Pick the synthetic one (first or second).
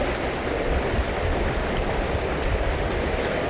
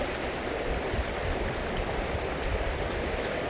second